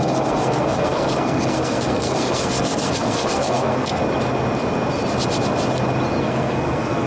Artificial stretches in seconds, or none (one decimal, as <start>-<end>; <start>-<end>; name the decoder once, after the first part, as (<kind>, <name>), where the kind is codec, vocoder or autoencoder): 0.0-4.0 (codec, SNAC); 6.2-7.1